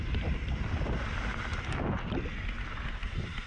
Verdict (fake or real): real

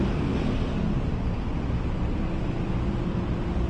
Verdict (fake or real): real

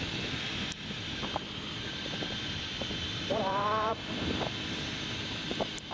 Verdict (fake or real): fake